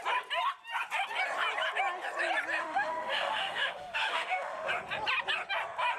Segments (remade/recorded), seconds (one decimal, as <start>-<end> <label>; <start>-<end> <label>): 0.0-2.6 recorded; 2.6-4.7 remade; 4.7-6.0 recorded